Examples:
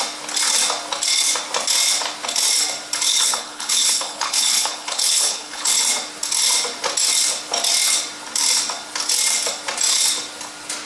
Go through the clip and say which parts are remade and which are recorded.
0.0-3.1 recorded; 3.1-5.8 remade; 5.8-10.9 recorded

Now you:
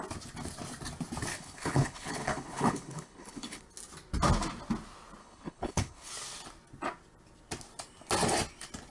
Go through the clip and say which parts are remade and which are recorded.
0.0-1.3 recorded; 1.3-3.6 remade; 3.6-5.2 recorded; 5.2-6.1 remade; 6.1-8.9 recorded

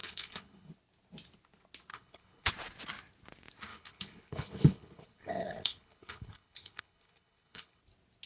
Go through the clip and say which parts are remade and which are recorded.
0.0-0.7 remade; 0.7-1.9 recorded; 1.9-2.5 remade; 2.5-3.7 recorded; 3.7-7.8 remade; 7.8-8.3 recorded

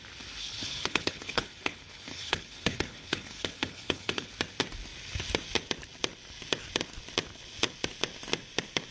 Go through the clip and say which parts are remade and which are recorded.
0.0-0.4 recorded; 0.4-4.3 remade; 4.3-8.9 recorded

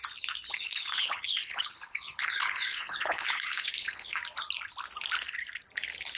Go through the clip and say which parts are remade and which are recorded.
0.0-0.5 recorded; 0.5-4.2 remade; 4.2-6.2 recorded